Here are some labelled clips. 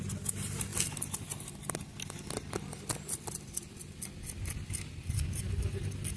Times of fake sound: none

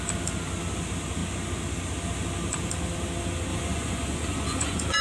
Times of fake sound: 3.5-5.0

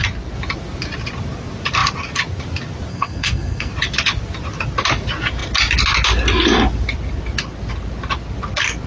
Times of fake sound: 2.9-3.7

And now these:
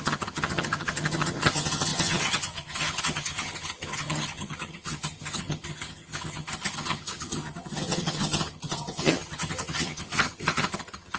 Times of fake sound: 0.0-11.2

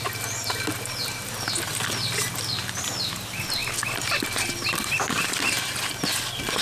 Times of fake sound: none

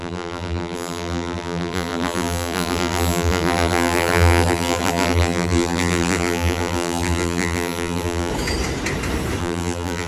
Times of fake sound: 0.0-8.3; 9.4-10.1